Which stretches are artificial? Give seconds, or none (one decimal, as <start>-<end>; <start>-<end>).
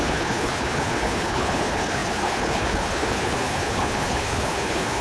0.0-5.0